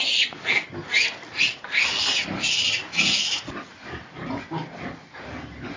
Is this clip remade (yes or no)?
no